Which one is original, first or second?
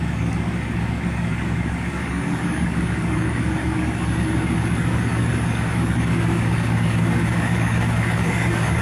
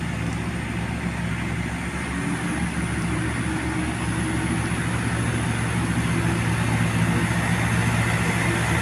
second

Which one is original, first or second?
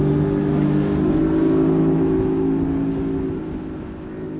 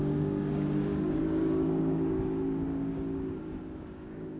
first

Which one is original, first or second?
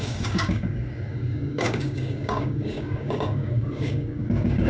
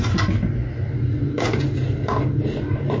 second